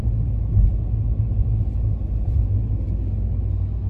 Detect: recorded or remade recorded